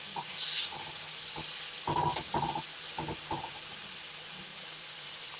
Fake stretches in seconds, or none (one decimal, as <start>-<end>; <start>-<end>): 4.5-5.4